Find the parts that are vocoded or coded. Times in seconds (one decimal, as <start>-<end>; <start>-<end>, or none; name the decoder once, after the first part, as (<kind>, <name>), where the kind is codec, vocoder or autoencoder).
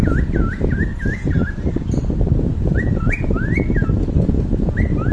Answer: 0.9-4.0 (vocoder, BigVGAN v2)